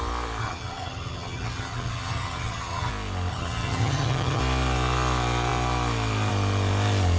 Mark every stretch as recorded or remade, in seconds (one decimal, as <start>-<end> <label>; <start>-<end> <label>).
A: 0.0-0.4 recorded; 0.4-2.9 remade; 2.9-3.3 recorded; 3.3-4.4 remade; 4.4-7.2 recorded